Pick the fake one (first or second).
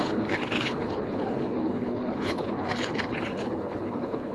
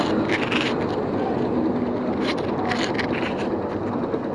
first